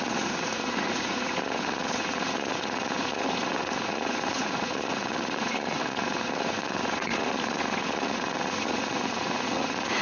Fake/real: fake